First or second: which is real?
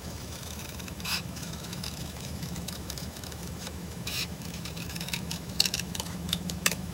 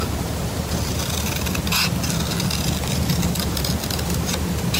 second